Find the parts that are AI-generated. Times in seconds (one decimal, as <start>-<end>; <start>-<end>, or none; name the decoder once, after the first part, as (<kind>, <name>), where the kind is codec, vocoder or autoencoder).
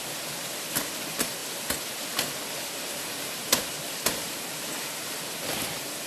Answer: none